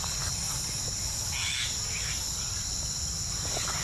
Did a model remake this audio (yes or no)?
no